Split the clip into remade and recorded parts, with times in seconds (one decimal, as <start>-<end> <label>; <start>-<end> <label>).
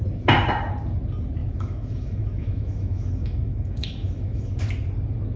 0.0-1.4 recorded; 1.4-4.6 remade; 4.6-5.4 recorded